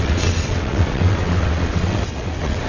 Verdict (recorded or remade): remade